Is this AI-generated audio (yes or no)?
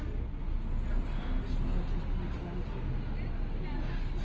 no